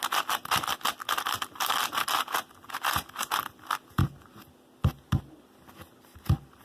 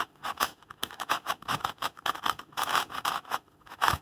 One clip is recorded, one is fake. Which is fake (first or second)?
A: second